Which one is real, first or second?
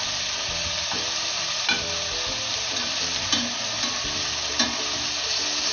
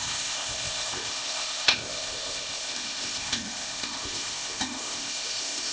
first